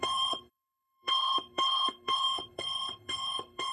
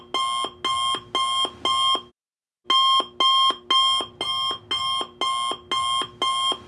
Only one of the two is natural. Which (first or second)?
second